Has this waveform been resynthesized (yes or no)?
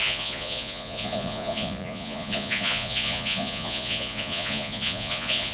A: yes